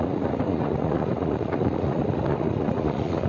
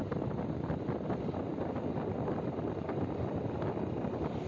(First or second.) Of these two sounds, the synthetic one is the first